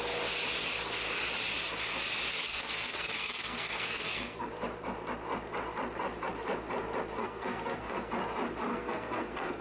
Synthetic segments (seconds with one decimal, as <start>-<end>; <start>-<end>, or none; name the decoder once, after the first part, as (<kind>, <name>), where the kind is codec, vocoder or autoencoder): 2.3-4.5 (codec, SNAC); 7.2-8.1; 8.7-9.6